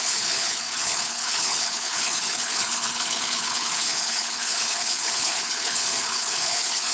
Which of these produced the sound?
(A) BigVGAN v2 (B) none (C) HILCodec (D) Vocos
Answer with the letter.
C